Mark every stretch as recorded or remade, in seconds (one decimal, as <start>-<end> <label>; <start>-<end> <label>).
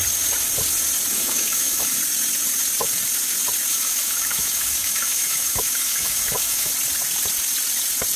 0.0-1.1 recorded; 1.1-2.0 remade; 2.0-3.7 recorded; 3.7-6.7 remade; 6.7-8.2 recorded